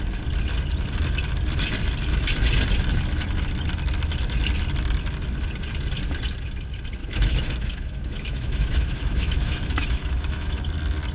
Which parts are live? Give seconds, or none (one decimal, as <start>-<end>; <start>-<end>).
0.0-7.0; 10.6-11.1